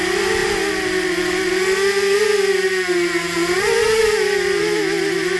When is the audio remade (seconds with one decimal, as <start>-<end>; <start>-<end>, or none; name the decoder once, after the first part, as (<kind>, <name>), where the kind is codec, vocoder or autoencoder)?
none

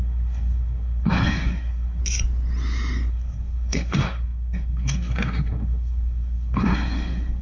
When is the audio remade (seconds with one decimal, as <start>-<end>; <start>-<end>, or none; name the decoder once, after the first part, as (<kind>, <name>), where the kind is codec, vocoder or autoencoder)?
0.0-2.0 (codec, SNAC); 3.1-7.4